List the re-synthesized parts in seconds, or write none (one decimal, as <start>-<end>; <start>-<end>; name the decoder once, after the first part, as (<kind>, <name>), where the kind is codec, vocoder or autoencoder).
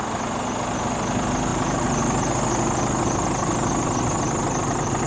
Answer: 1.5-2.2 (vocoder, BigVGAN v2)